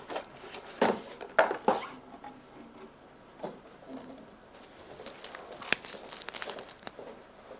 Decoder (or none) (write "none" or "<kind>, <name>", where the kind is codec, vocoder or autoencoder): none